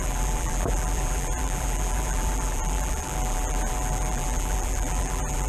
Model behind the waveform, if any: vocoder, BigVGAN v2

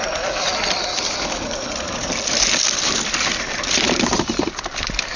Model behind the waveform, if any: vocoder, BigVGAN v2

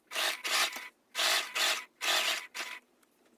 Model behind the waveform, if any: none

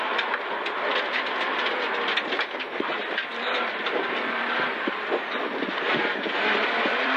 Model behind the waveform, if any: vocoder, BigVGAN v2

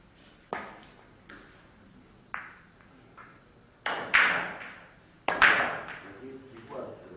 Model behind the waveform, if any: vocoder, BigVGAN v2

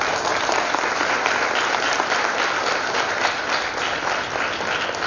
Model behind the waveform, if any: none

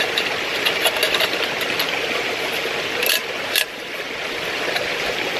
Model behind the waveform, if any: none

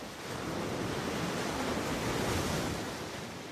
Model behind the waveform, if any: none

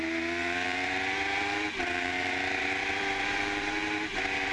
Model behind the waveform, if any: vocoder, BigVGAN v2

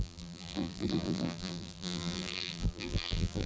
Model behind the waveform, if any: vocoder, BigVGAN v2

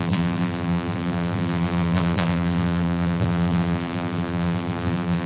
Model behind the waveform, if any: vocoder, BigVGAN v2